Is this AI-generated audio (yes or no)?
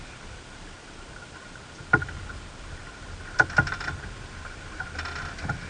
no